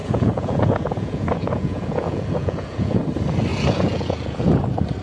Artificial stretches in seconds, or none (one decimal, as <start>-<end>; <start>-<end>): 0.0-3.0; 3.5-4.6